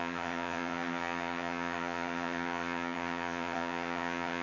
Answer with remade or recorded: remade